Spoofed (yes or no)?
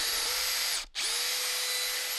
no